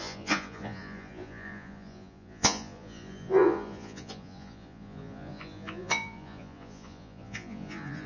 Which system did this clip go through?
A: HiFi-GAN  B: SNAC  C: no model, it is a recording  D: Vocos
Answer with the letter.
D